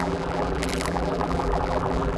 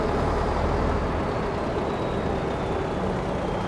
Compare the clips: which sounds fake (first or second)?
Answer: first